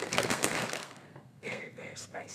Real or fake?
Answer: fake